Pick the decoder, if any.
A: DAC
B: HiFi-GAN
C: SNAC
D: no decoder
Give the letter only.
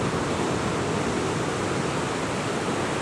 D